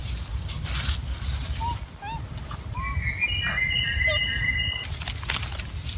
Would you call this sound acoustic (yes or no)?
yes